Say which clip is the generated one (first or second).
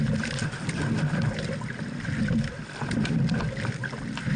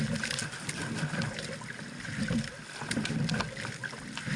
first